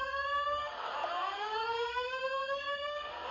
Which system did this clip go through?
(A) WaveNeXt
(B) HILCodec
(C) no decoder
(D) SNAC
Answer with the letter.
D